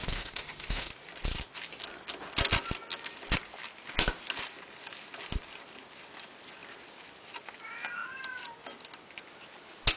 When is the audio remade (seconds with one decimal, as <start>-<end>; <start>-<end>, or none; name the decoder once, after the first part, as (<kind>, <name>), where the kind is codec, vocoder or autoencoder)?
0.0-0.9 (autoencoder, DAC-VAE)

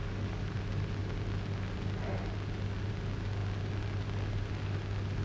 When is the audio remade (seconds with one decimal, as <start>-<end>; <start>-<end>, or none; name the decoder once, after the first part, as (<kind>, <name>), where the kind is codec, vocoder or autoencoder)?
0.0-0.6 (codec, DAC)

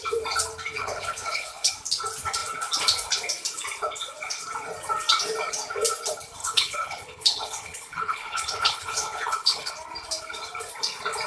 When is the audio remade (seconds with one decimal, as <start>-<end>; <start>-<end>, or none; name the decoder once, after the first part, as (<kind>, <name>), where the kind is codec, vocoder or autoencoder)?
0.8-1.7 (codec, HILCodec); 6.4-9.7

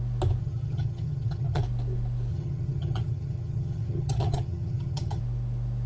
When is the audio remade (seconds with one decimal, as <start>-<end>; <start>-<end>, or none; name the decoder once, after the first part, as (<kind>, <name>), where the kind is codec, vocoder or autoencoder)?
0.4-1.6 (vocoder, HiFi-GAN); 2.3-5.2